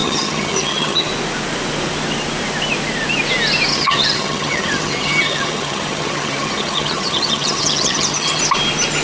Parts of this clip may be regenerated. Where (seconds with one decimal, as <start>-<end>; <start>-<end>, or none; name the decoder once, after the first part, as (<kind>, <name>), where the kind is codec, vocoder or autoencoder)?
0.0-1.1 (vocoder, HiFi-GAN); 3.7-8.4